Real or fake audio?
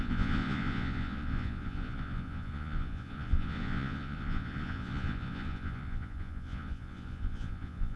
fake